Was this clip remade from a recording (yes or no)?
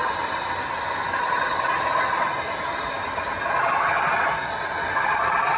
no